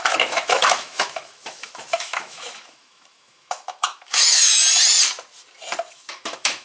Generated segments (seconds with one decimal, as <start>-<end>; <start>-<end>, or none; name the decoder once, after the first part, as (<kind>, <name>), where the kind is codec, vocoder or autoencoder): 0.0-4.6 (autoencoder, DAC-VAE); 5.9-6.6